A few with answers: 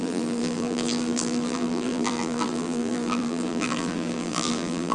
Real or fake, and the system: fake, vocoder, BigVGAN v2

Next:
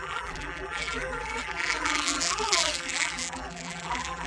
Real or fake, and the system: fake, vocoder, BigVGAN v2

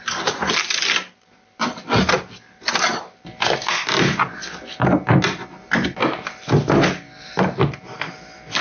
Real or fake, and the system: real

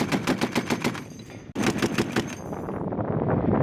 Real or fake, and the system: real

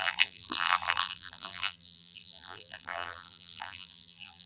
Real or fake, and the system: fake, vocoder, BigVGAN v2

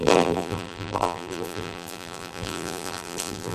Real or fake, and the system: fake, vocoder, BigVGAN v2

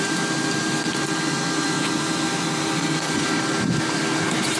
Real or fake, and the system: real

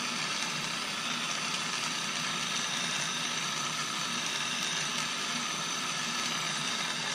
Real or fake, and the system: fake, vocoder, BigVGAN v2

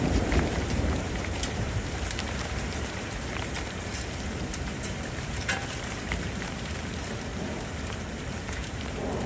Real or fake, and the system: fake, vocoder, BigVGAN v2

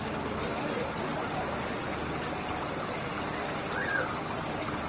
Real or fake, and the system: real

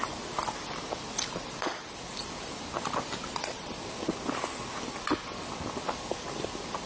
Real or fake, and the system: real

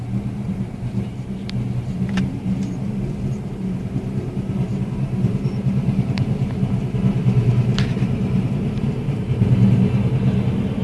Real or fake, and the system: fake, vocoder, BigVGAN v2